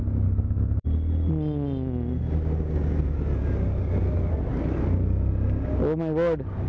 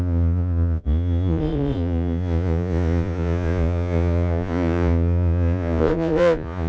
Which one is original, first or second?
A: first